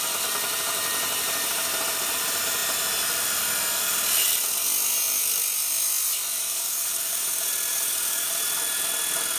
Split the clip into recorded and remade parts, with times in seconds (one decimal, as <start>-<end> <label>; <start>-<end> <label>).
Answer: 0.0-6.4 recorded; 6.4-7.3 remade; 7.3-7.7 recorded; 7.7-8.3 remade; 8.3-9.4 recorded